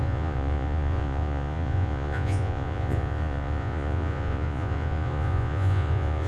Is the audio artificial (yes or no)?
yes